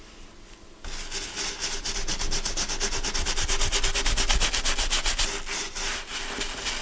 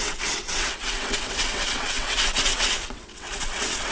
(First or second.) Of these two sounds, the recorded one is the first